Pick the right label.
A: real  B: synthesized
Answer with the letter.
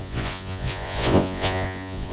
B